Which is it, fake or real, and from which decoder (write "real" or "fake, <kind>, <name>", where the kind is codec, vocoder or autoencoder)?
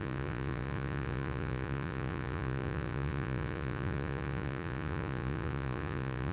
fake, vocoder, Vocos